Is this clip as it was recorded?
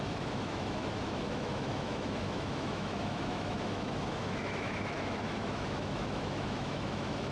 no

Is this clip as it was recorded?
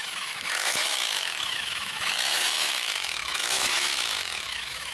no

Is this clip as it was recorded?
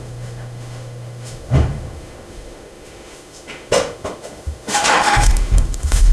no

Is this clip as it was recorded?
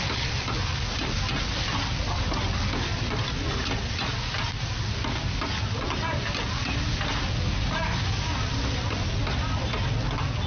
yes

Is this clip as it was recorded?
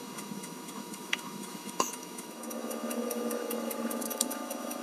no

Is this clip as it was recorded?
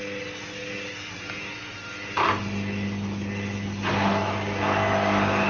yes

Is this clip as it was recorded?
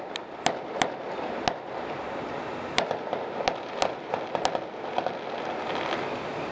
yes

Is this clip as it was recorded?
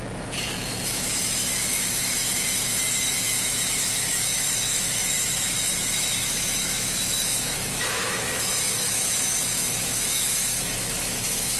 no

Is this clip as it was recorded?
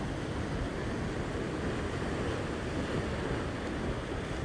yes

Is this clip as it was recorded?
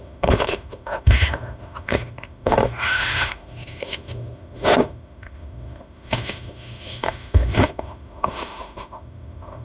no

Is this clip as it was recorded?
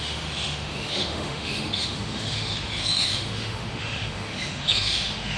no